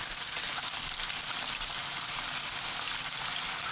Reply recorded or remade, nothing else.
recorded